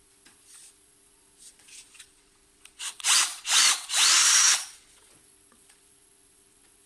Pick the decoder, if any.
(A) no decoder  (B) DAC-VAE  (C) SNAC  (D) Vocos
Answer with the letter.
D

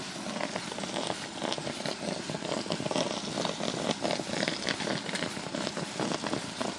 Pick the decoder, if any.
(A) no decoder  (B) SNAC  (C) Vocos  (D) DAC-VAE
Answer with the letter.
A